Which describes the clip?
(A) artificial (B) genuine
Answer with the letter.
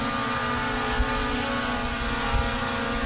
B